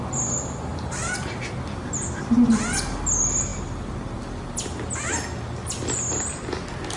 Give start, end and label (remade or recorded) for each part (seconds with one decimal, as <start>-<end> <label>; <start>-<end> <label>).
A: 0.0-0.7 recorded; 0.7-1.5 remade; 1.5-7.0 recorded